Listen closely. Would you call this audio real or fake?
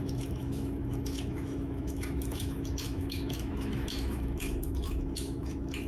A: fake